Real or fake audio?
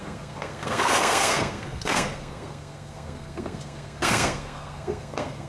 fake